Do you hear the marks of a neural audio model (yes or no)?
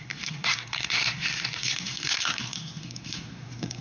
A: yes